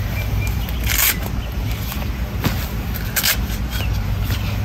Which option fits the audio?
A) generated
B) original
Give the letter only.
B